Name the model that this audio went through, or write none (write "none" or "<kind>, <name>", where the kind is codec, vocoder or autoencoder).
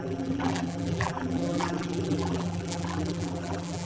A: vocoder, BigVGAN v2